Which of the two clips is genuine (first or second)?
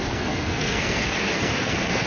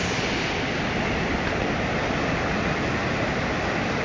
second